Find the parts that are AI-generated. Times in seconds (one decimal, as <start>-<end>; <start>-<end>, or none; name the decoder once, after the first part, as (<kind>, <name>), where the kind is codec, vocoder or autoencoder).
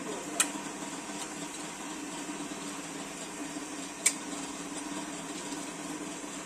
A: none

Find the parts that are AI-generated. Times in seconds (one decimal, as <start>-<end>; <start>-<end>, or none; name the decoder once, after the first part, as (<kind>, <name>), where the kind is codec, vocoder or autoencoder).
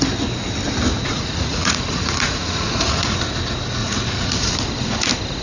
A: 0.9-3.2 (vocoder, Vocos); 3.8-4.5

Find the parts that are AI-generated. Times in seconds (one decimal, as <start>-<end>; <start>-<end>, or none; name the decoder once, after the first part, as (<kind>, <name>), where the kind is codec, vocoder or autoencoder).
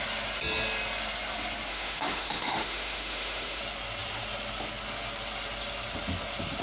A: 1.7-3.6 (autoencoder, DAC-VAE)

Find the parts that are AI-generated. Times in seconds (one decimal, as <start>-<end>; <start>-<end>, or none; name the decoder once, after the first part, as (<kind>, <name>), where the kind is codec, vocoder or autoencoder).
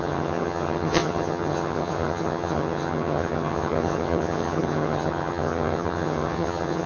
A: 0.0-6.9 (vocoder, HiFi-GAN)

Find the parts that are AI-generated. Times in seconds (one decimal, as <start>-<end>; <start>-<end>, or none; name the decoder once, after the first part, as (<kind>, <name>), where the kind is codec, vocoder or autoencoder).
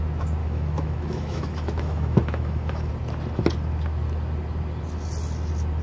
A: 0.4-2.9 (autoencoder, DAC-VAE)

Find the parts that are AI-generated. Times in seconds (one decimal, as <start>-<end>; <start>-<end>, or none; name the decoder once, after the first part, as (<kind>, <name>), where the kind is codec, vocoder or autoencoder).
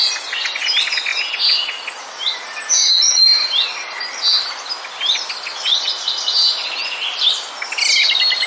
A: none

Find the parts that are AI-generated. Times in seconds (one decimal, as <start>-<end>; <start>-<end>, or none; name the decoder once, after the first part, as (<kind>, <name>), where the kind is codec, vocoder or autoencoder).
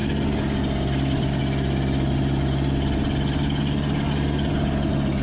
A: none